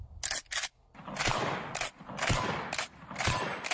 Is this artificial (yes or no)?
no